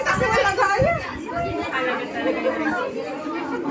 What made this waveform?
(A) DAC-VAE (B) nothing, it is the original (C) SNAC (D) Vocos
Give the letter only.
B